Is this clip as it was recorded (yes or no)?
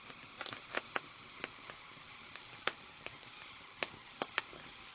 yes